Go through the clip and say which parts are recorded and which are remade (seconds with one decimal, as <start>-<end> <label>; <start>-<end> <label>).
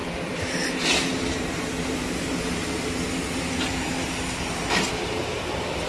0.0-4.0 remade; 4.0-4.5 recorded; 4.5-5.9 remade